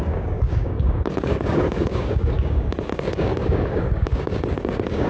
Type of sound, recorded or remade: remade